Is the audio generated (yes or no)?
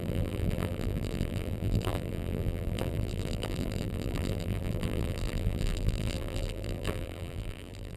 yes